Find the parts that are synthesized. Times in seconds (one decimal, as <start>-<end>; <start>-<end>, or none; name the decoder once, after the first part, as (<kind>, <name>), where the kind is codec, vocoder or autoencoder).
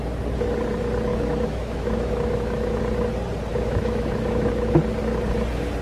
1.1-2.8 (autoencoder, DAC-VAE); 3.5-4.8